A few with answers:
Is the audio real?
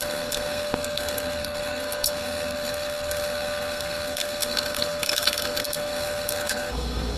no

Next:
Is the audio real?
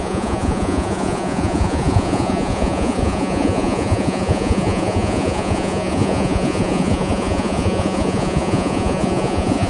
no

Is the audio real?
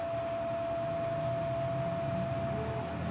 yes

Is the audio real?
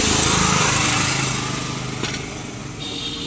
yes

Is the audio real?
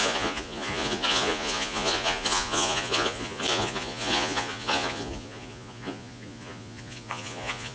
no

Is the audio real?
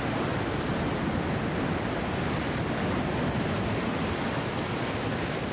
yes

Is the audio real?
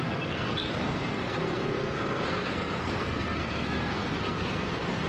no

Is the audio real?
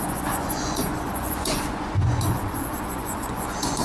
no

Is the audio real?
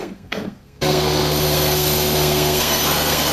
no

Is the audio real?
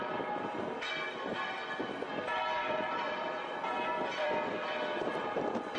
no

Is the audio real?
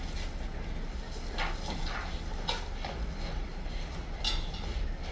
yes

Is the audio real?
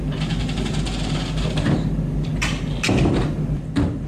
yes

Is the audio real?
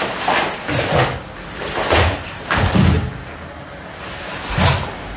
yes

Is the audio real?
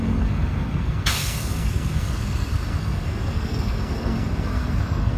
no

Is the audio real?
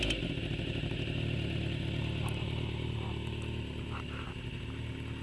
yes